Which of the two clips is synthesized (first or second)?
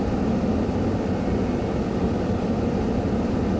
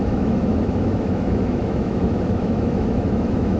second